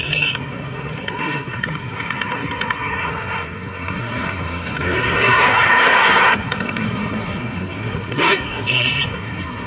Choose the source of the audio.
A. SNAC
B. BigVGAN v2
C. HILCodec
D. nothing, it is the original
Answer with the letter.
A